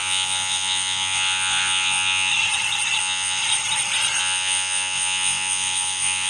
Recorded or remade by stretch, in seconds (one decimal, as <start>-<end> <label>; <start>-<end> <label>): 0.0-2.3 remade; 2.3-3.0 recorded; 3.0-3.4 remade; 3.4-4.2 recorded; 4.2-6.3 remade